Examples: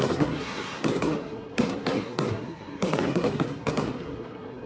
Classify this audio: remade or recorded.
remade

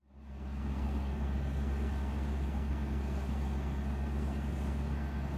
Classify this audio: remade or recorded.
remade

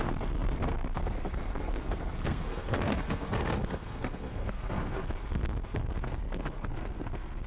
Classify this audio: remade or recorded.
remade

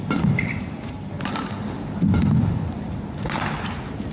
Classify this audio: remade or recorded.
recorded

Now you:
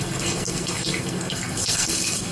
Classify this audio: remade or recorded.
remade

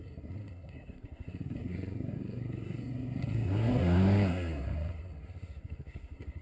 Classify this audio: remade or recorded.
remade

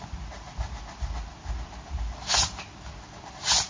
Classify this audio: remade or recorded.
recorded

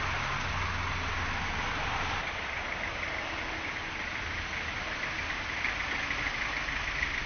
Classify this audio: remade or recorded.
recorded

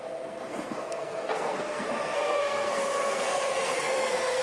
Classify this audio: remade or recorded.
remade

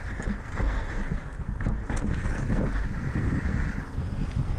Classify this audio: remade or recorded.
remade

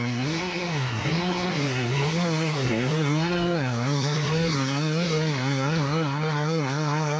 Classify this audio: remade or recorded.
remade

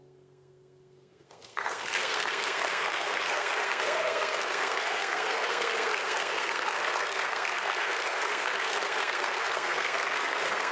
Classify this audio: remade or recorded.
remade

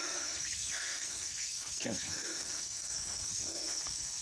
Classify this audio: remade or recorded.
remade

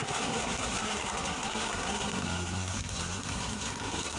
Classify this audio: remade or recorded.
remade